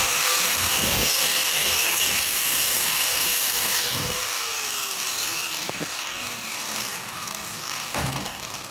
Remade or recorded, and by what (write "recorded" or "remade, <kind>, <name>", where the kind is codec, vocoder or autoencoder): remade, codec, DAC